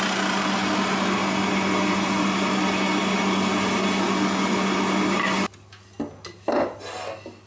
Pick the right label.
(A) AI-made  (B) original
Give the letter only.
B